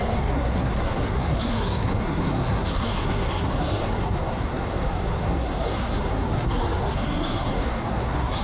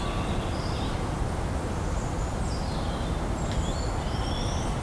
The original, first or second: second